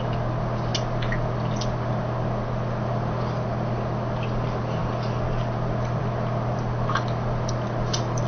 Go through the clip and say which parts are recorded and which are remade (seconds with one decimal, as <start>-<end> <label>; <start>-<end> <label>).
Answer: 0.0-8.3 recorded